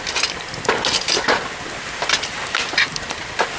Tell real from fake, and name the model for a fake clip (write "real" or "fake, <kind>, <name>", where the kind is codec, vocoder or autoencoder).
real